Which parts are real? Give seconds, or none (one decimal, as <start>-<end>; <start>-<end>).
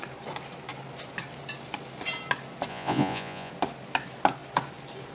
0.0-2.7; 3.5-5.1